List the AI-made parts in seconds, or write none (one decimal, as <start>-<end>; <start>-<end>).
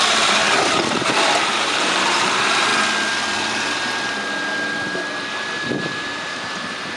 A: 0.0-0.4; 1.4-2.7; 5.1-7.0